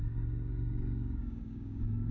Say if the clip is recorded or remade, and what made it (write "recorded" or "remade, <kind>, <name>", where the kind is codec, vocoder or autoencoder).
remade, codec, DAC